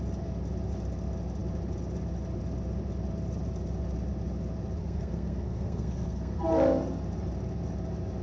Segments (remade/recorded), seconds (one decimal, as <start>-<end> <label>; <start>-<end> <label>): 0.0-4.8 recorded; 4.8-6.4 remade; 6.4-8.2 recorded

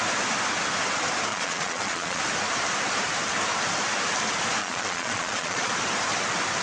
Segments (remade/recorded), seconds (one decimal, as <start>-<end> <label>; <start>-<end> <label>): 0.0-1.3 recorded; 1.3-2.2 remade; 2.2-4.6 recorded; 4.6-5.7 remade; 5.7-6.6 recorded

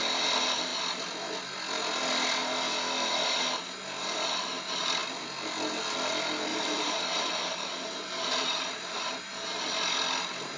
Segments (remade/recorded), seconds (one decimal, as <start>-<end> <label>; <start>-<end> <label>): 0.0-6.5 recorded; 6.5-9.7 remade; 9.7-10.6 recorded

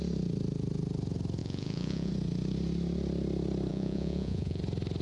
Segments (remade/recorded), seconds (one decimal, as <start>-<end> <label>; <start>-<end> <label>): 0.0-1.4 recorded; 1.4-2.1 remade; 2.1-3.7 recorded; 3.7-4.6 remade; 4.6-5.0 recorded